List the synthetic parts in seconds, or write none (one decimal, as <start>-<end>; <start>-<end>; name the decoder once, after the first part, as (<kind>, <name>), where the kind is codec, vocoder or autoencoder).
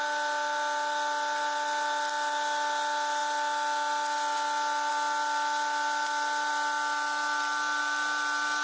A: none